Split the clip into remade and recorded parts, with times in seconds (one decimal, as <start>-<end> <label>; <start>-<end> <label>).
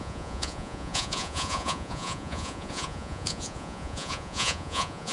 0.0-5.1 remade